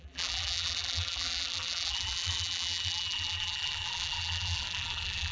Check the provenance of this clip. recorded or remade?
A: remade